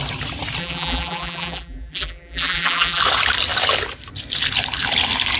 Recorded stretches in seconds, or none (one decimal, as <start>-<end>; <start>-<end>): 0.0-0.6; 3.0-5.4